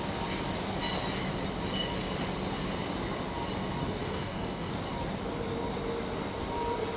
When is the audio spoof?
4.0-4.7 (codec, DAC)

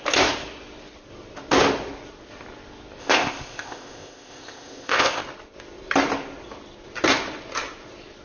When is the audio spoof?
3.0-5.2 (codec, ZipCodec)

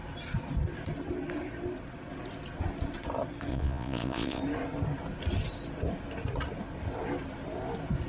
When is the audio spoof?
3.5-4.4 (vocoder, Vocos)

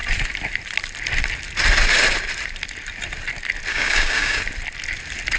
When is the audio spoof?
3.7-4.4 (codec, DAC)